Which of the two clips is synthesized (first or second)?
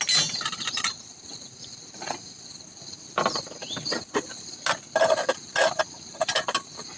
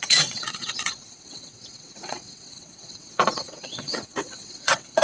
second